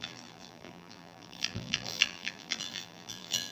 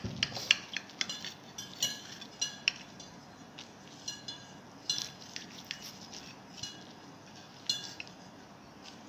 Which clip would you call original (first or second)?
second